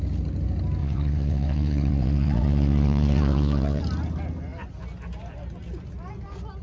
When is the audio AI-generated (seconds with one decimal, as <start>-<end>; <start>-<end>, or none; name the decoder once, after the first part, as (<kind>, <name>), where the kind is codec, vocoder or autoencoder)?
0.8-3.8 (vocoder, WaveNeXt)